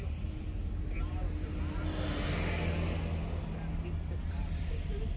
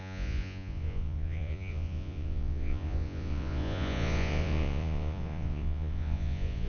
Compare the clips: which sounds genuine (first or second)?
first